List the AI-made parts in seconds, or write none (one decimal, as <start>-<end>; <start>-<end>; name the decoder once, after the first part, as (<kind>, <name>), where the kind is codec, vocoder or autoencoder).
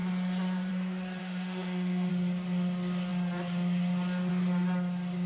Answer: 1.2-2.1 (autoencoder, DAC-VAE)